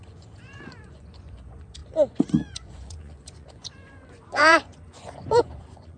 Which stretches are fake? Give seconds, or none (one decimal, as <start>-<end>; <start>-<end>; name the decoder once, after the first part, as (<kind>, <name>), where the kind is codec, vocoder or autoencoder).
0.0-6.0 (vocoder, Vocos)